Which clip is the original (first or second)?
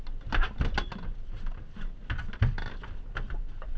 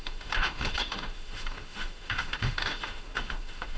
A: first